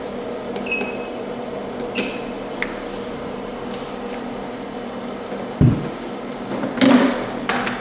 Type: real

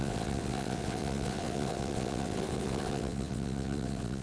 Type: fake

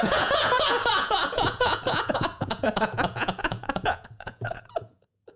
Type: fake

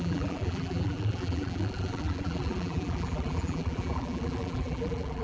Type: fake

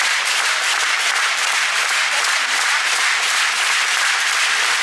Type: fake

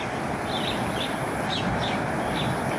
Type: real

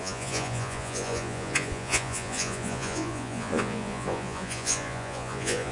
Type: fake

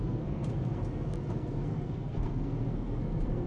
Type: fake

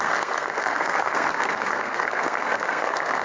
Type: fake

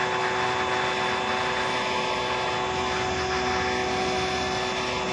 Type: real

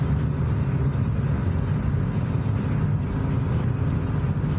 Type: real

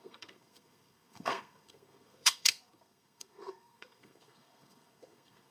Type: fake